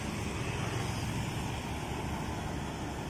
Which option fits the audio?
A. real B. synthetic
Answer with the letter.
A